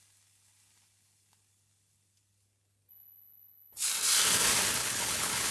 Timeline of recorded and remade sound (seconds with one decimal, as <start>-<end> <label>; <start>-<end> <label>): 0.0-2.9 recorded; 2.9-3.9 remade; 3.9-4.8 recorded; 4.8-5.5 remade